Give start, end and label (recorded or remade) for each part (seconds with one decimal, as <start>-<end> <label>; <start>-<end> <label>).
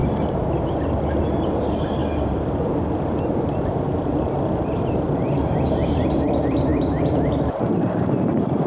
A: 0.0-8.7 remade